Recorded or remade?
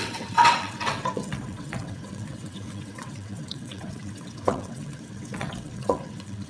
remade